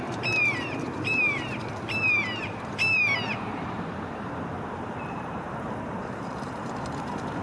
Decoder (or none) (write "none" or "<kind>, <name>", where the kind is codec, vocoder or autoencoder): vocoder, BigVGAN v2